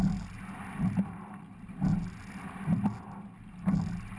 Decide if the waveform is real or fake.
real